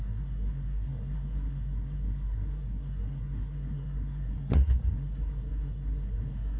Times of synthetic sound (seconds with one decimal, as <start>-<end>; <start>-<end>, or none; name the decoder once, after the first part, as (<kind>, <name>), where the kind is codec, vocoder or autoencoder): 0.0-6.6 (codec, SNAC)